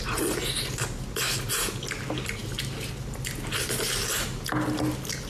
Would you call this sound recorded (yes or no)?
yes